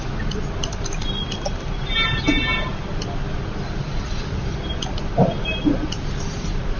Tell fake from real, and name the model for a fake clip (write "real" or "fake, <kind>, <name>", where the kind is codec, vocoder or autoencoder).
real